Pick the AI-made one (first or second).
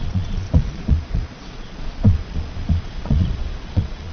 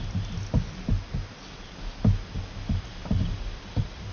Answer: first